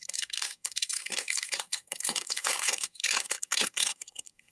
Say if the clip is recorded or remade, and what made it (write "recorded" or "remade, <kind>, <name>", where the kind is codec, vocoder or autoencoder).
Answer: remade, codec, SNAC